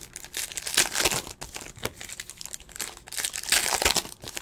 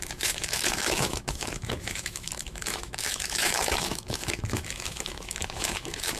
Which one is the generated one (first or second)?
second